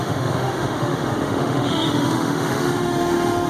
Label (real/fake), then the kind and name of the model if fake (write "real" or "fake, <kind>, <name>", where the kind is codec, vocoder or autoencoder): fake, autoencoder, DAC-VAE